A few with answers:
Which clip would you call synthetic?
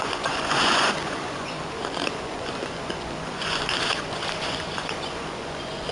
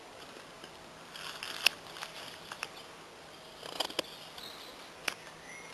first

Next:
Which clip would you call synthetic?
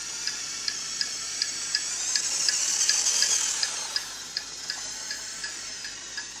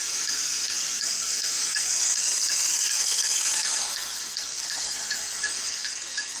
second